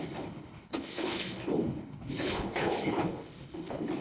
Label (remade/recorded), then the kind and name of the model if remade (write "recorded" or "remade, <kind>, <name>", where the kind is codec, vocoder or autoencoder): remade, codec, HILCodec